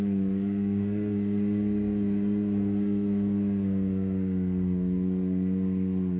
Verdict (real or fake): fake